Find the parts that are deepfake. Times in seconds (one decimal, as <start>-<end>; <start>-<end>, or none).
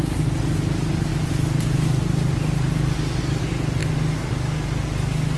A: none